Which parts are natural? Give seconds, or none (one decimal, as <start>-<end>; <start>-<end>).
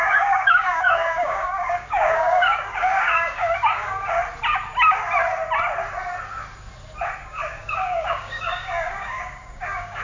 4.2-7.2